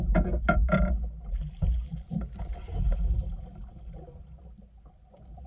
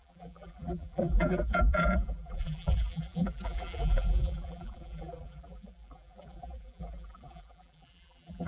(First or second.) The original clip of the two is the first